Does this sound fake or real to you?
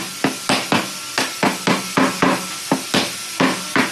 real